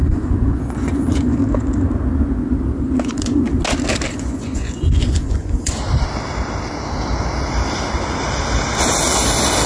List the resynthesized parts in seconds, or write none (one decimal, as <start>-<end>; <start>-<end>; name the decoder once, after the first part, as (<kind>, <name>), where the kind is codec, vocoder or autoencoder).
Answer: 0.0-1.4 (vocoder, Vocos); 3.0-3.5; 4.1-5.8